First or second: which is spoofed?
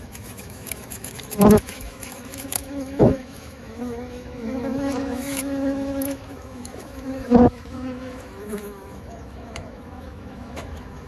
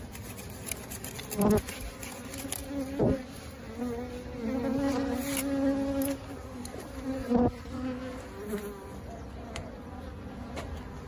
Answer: first